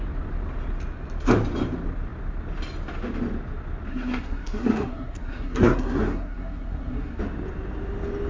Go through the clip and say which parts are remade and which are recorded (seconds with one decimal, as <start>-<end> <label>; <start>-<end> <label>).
0.0-3.9 recorded; 3.9-7.2 remade; 7.2-8.3 recorded